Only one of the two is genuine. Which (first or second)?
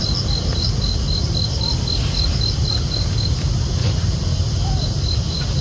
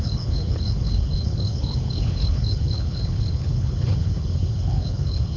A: first